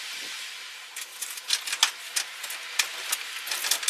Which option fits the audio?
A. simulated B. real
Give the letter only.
B